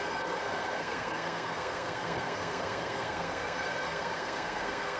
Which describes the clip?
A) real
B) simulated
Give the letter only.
B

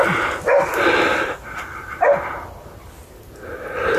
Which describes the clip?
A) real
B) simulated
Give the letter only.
A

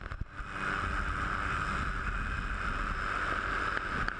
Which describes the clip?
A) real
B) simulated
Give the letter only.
A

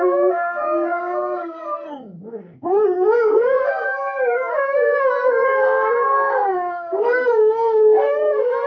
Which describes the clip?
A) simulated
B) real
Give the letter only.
A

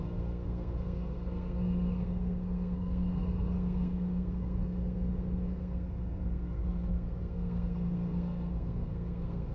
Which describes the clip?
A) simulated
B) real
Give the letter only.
A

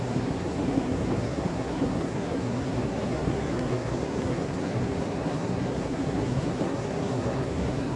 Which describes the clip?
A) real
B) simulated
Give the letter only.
B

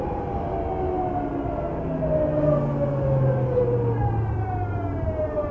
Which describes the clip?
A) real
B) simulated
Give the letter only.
A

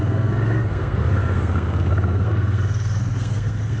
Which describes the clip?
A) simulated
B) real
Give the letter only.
A